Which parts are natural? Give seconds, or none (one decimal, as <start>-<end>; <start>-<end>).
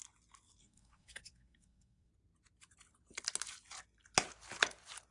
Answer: 0.0-0.6; 2.1-5.1